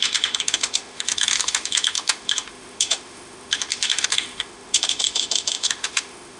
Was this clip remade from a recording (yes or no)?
yes